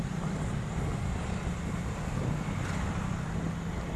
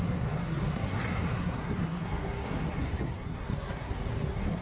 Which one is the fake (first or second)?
second